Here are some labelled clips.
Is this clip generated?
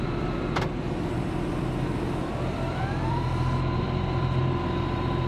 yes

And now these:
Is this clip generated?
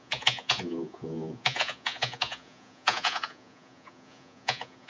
yes